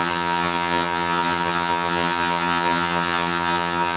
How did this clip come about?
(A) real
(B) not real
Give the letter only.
B